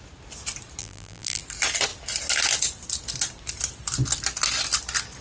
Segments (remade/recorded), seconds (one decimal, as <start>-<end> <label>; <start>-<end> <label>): 0.0-0.8 recorded; 0.8-1.4 remade; 1.4-5.2 recorded

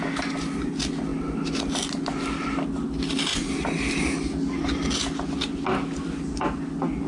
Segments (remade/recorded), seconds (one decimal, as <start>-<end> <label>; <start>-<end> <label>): 0.0-7.1 recorded

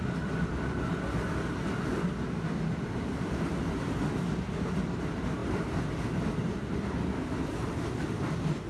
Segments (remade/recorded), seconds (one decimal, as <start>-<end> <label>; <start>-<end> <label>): 0.0-8.7 recorded

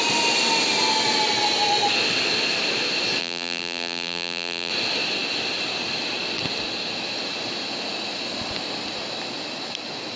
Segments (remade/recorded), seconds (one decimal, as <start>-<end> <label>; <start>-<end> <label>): 0.0-3.2 recorded; 3.2-4.7 remade; 4.7-10.2 recorded

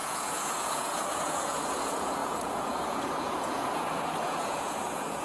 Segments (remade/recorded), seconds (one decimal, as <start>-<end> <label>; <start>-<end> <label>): 0.0-5.2 remade

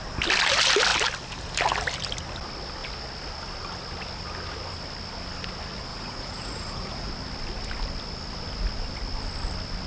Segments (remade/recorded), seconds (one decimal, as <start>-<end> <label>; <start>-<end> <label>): 0.0-5.9 recorded; 5.9-7.1 remade; 7.1-9.9 recorded

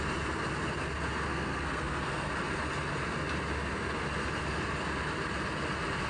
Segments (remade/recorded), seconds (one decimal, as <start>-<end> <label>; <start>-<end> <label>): 0.0-1.3 recorded; 1.3-2.3 remade; 2.3-6.1 recorded

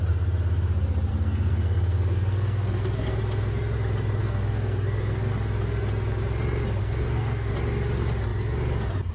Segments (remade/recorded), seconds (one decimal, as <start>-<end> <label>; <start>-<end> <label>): 0.0-1.1 recorded; 1.1-3.2 remade; 3.2-4.2 recorded; 4.2-5.3 remade; 5.3-6.8 recorded; 6.8-7.5 remade; 7.5-9.1 recorded